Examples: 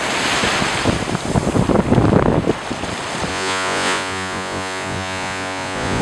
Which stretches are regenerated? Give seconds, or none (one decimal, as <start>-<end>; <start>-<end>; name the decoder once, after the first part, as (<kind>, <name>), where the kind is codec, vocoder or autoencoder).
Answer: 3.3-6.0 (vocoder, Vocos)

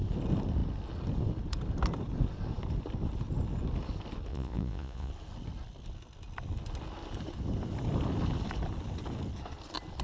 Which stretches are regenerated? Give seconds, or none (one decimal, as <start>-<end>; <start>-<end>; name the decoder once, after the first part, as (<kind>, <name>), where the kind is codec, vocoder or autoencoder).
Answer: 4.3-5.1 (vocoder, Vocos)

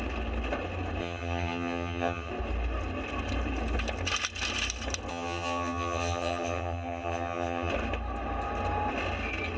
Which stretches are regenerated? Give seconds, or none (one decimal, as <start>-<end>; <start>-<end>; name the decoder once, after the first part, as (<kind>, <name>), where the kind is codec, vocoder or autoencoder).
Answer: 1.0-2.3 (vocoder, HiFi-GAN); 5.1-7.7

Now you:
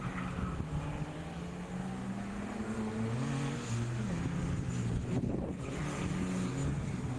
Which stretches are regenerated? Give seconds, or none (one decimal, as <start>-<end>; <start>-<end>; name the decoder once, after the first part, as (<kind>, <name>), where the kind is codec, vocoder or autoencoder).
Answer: 4.8-5.8 (codec, HILCodec)

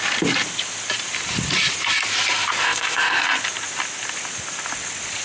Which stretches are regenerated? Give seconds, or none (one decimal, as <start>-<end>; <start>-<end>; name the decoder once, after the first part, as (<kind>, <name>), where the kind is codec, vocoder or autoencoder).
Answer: 2.6-3.2 (codec, ZipCodec)